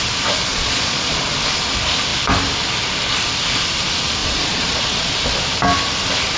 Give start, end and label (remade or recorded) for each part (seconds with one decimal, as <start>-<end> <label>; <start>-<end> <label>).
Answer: 0.0-0.5 recorded; 0.5-1.2 remade; 1.2-4.2 recorded; 4.2-5.1 remade; 5.1-6.4 recorded